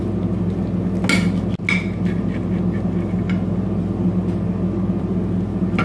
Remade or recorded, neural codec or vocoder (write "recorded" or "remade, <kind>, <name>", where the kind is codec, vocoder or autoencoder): recorded